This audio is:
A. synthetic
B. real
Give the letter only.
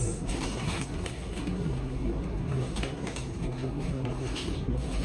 A